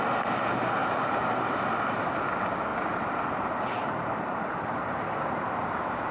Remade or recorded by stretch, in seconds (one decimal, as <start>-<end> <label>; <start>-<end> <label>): 0.0-0.8 recorded; 0.8-1.8 remade; 1.8-2.7 recorded; 2.7-6.1 remade